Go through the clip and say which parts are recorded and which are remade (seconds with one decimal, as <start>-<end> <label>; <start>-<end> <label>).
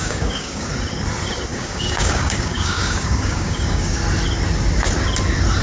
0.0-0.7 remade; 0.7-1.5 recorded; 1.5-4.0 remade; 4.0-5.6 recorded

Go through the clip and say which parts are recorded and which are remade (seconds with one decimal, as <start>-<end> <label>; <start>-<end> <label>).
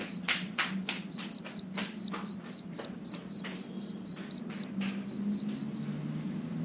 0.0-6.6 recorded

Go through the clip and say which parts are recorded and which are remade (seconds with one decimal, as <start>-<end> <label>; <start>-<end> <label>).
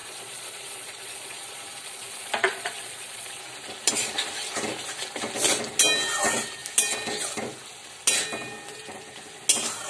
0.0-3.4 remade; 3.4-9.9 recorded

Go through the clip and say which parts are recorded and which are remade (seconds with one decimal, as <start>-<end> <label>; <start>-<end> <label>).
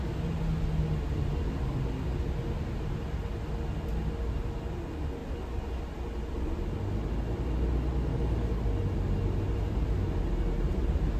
0.0-8.1 recorded; 8.1-8.6 remade; 8.6-11.2 recorded